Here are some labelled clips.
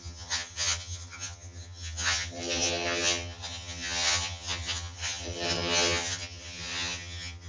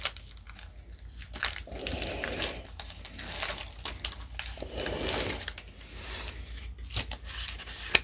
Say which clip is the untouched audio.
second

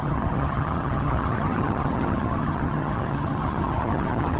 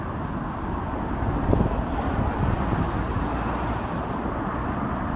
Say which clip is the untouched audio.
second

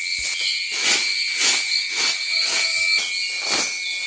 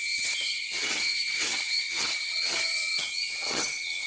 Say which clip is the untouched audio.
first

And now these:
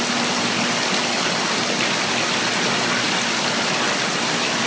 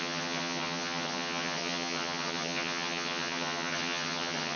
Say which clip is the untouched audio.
first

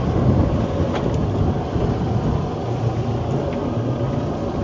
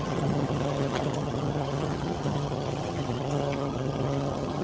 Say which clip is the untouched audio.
first